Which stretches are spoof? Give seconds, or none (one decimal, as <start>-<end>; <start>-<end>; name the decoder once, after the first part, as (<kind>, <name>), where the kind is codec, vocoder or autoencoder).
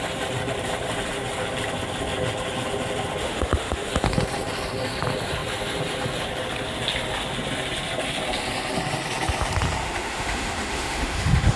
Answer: 3.2-3.9 (autoencoder, DAC-VAE); 9.8-11.6